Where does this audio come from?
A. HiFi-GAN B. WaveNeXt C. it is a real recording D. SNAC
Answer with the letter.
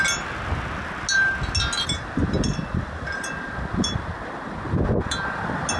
C